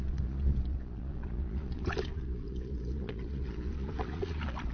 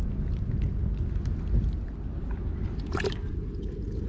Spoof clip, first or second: first